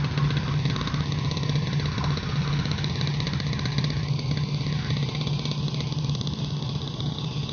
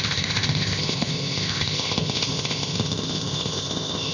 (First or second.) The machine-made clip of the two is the second